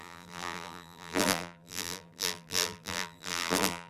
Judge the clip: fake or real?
fake